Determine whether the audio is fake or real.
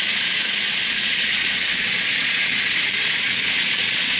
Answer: fake